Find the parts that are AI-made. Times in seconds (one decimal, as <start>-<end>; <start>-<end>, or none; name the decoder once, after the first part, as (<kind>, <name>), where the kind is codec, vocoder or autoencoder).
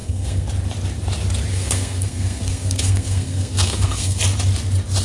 0.0-0.5 (codec, SNAC); 1.5-4.2